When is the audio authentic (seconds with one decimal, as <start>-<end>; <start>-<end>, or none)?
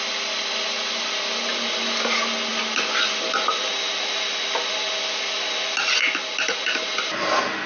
0.0-7.7